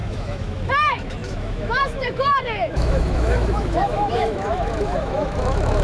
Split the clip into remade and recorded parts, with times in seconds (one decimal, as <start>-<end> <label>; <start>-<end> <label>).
0.0-5.8 remade